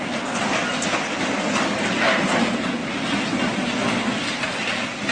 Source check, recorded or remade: recorded